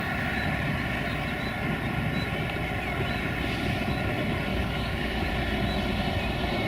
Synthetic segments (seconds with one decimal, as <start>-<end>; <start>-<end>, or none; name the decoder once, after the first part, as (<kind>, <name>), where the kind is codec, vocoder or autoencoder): 4.5-5.3 (codec, DAC)